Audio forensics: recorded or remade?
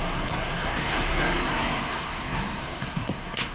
remade